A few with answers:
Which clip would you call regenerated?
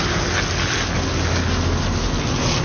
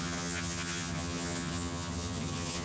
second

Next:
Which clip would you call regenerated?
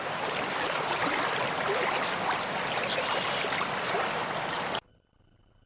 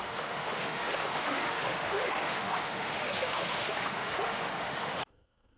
second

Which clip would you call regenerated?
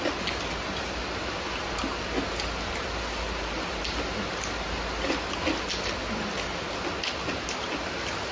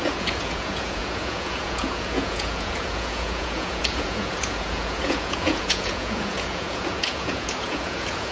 second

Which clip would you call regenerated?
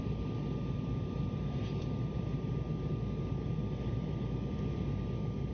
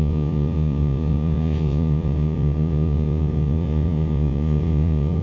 second